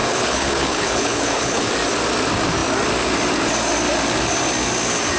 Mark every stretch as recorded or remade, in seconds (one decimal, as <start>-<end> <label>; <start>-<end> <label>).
0.0-1.7 remade; 1.7-5.2 recorded